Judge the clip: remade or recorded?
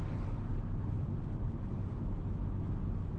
recorded